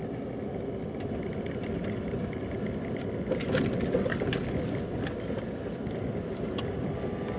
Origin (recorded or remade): recorded